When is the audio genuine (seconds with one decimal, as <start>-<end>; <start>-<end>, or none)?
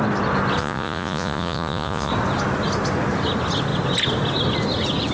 0.0-0.6; 2.1-5.1